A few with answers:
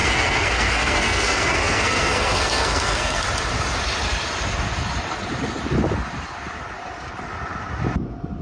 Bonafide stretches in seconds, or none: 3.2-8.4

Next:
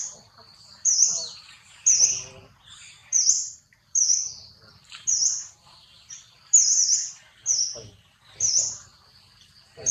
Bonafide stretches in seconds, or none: none

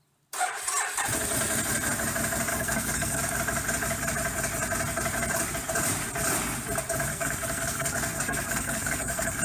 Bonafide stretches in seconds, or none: 0.0-2.5; 3.2-7.1

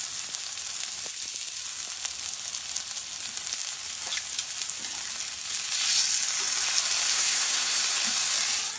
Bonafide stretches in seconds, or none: 0.0-7.1; 7.8-8.8

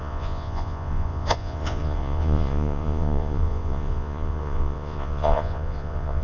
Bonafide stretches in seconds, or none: none

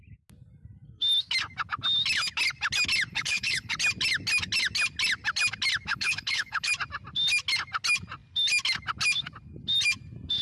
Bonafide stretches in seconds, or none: 0.0-3.1; 3.7-5.9; 6.7-10.4